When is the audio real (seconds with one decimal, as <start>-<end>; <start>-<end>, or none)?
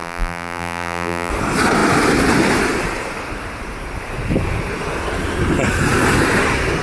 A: 1.3-6.8